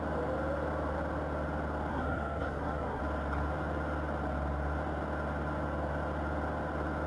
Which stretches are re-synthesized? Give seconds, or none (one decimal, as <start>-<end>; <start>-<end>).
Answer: 1.9-3.0